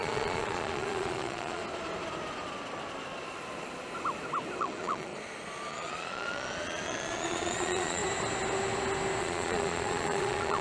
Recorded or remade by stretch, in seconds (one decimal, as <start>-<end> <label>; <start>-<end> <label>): 0.0-1.6 remade; 1.6-4.6 recorded; 4.6-5.1 remade; 5.1-5.7 recorded; 5.7-8.0 remade; 8.0-9.2 recorded; 9.2-10.6 remade